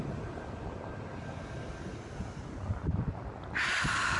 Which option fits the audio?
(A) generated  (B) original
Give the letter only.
B